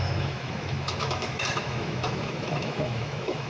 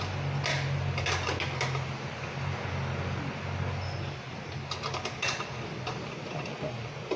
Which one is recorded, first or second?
second